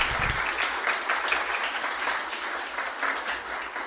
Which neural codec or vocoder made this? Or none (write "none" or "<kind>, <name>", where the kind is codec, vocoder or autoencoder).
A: none